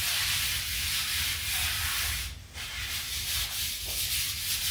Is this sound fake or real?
real